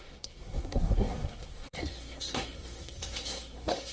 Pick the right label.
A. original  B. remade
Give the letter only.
B